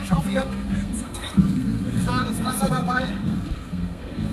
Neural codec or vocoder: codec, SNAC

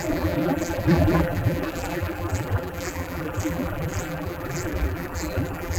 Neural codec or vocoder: vocoder, BigVGAN v2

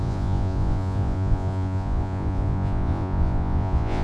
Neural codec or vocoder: vocoder, Vocos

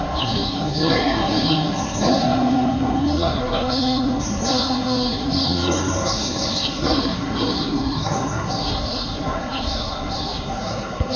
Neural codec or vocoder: codec, SNAC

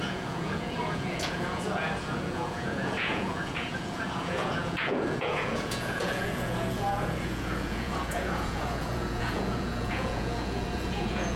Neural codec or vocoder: vocoder, Vocos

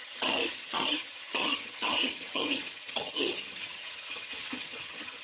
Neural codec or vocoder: vocoder, HiFi-GAN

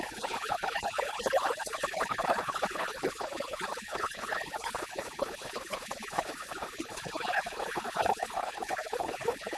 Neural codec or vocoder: codec, HILCodec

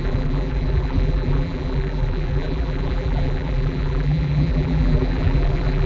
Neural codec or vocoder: vocoder, BigVGAN v2